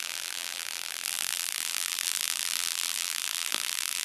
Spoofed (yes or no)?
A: yes